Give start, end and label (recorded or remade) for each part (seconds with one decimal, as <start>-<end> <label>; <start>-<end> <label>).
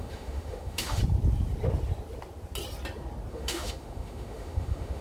0.0-1.0 remade; 1.0-3.3 recorded; 3.3-5.0 remade